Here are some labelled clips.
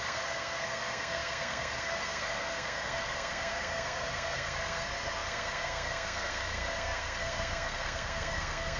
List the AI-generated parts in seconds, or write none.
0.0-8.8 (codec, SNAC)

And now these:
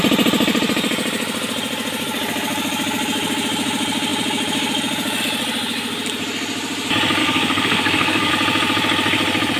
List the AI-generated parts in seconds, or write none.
7.2-8.3 (codec, SNAC)

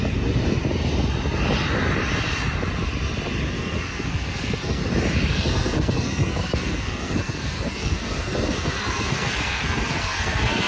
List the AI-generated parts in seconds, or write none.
3.5-4.8 (codec, SNAC); 5.3-10.7